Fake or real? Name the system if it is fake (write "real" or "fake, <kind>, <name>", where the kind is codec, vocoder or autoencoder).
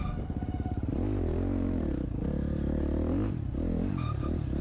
real